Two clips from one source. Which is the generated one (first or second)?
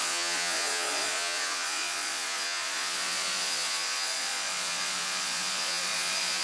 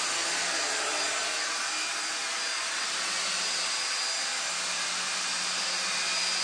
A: first